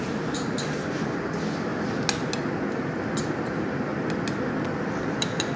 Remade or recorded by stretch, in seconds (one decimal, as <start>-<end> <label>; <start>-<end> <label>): 0.0-1.7 remade; 1.7-3.2 recorded; 3.2-3.9 remade; 3.9-5.6 recorded